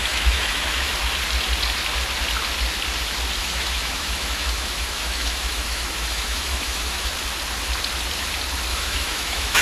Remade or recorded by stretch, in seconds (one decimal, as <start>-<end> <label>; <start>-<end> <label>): 0.0-0.9 remade; 0.9-3.4 recorded; 3.4-7.1 remade; 7.1-8.7 recorded; 8.7-9.6 remade